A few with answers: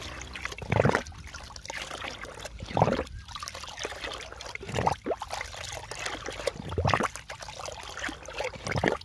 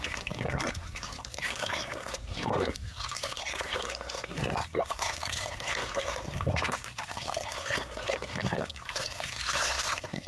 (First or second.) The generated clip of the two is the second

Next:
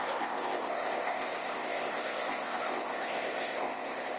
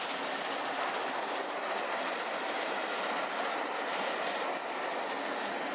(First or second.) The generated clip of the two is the first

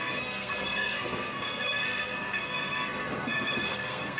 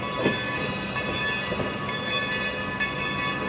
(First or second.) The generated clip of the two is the first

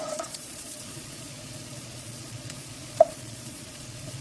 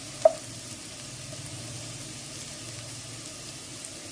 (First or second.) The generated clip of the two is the first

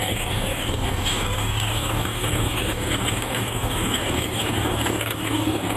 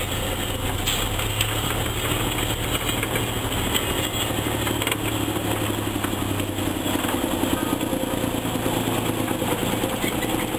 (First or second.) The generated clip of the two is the first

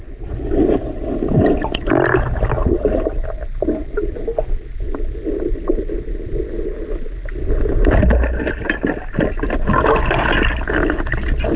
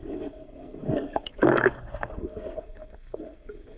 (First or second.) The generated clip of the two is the second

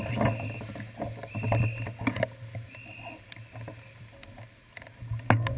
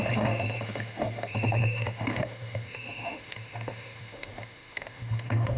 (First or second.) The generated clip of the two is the second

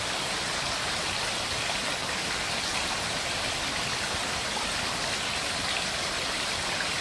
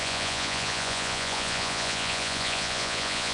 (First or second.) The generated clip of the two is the second